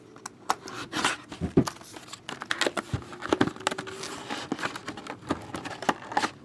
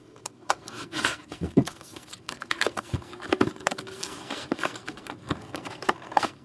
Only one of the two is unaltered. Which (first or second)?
first